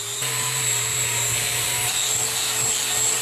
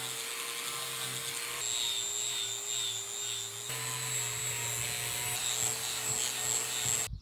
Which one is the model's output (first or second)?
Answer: first